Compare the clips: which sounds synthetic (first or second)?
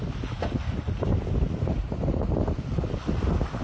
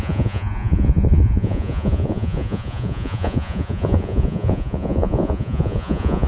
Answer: second